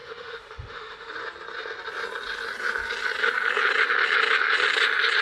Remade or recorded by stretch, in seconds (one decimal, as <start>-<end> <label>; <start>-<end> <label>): 0.0-1.1 remade; 1.1-5.2 recorded